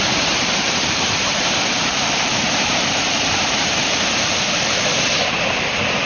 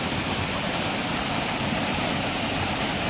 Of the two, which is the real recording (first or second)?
second